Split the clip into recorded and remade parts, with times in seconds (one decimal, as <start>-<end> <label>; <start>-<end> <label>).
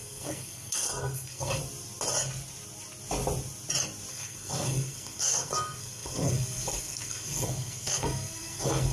0.0-1.6 remade; 1.6-4.1 recorded; 4.1-8.9 remade